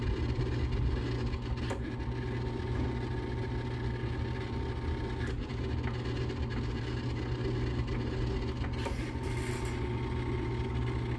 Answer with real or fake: real